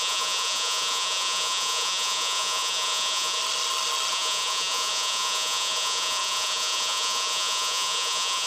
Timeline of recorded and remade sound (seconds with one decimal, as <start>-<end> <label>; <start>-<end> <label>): 0.0-3.4 remade; 3.4-4.1 recorded; 4.1-8.5 remade